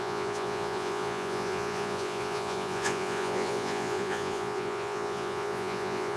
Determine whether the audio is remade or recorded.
remade